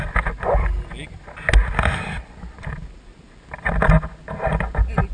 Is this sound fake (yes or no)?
no